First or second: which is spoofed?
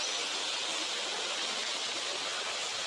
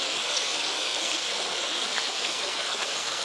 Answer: second